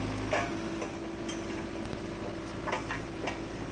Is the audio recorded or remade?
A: recorded